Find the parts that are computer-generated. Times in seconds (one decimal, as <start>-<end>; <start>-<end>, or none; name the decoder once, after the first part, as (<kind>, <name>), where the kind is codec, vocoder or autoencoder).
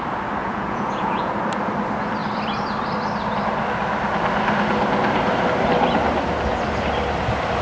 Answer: 0.4-1.3 (vocoder, Vocos)